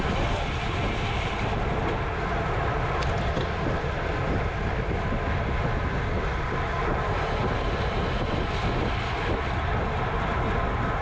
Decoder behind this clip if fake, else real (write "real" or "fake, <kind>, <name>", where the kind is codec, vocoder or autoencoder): real